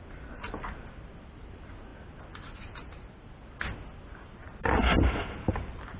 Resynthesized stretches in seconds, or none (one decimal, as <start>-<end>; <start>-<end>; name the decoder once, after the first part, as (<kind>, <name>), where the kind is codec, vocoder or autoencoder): none